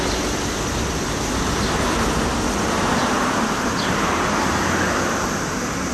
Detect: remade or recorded recorded